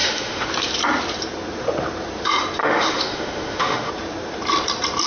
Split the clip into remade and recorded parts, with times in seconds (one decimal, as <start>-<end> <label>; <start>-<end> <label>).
0.0-0.5 remade; 0.5-2.6 recorded; 2.6-3.9 remade; 3.9-5.1 recorded